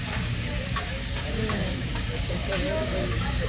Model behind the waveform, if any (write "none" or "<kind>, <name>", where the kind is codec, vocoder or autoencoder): codec, DAC